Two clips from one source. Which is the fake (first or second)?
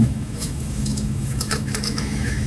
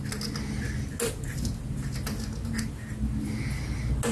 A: first